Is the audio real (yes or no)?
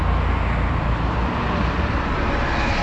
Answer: yes